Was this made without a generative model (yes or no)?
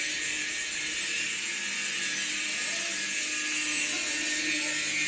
yes